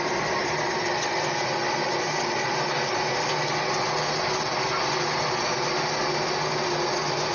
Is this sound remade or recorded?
recorded